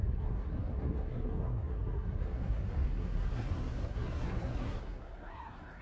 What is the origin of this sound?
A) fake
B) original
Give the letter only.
A